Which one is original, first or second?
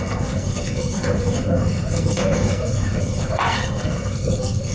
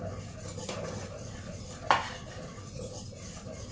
second